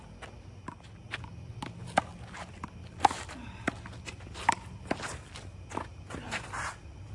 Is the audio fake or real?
real